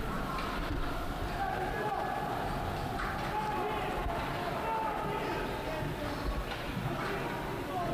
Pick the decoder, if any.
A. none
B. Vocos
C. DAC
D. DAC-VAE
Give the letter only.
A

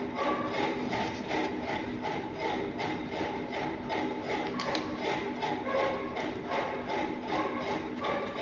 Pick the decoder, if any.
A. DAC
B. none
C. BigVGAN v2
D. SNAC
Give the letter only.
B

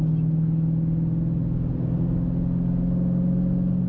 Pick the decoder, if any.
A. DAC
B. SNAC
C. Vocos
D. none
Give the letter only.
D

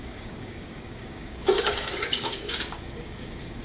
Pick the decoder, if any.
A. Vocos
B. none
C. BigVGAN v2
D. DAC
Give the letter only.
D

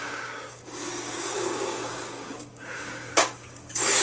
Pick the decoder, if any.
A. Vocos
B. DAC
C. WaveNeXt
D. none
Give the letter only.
B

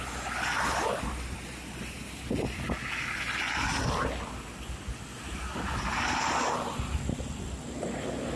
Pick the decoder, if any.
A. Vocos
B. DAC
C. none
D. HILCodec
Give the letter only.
C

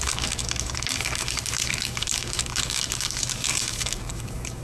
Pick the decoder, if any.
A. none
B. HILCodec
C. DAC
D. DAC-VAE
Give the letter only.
C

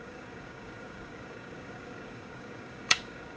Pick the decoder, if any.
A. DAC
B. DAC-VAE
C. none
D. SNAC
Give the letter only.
A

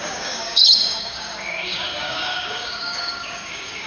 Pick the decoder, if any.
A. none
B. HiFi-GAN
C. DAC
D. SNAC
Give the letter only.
C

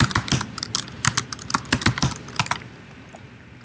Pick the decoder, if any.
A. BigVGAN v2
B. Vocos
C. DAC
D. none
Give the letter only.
D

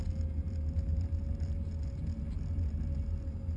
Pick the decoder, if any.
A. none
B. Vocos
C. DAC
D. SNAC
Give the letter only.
A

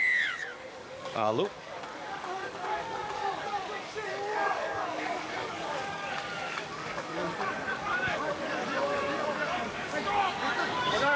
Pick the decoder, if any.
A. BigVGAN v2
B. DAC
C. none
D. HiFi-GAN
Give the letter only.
B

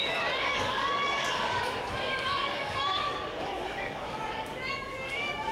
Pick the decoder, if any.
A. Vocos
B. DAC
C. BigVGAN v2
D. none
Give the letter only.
B